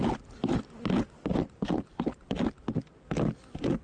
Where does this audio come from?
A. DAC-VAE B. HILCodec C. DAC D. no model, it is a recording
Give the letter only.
D